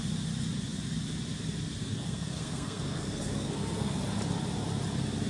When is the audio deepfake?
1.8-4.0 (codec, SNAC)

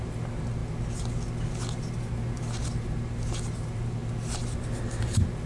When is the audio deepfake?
none

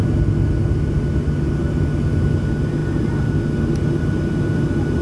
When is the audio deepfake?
none

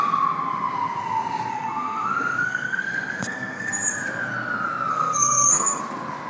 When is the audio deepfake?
1.5-3.7 (codec, SNAC); 4.9-5.8